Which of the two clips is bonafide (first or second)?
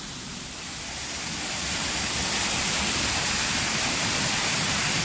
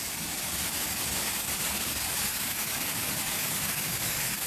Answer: first